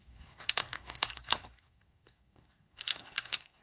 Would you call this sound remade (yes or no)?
yes